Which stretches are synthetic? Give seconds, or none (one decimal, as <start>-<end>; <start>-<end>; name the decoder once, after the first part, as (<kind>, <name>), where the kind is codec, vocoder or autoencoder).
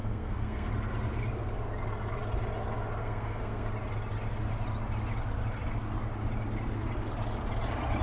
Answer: 0.0-0.7 (codec, SNAC); 3.0-3.7